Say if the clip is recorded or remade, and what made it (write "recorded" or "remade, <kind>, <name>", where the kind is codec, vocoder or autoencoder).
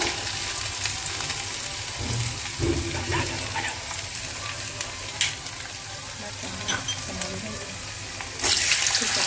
recorded